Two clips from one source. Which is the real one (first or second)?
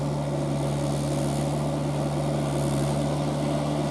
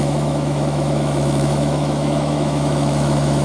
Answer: first